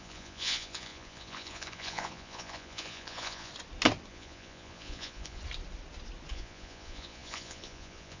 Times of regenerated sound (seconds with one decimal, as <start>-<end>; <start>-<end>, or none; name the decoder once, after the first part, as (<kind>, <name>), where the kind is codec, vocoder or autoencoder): 0.0-3.5 (vocoder, Vocos); 4.1-5.4; 6.3-8.2